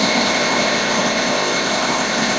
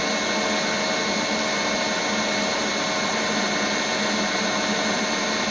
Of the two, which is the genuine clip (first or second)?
second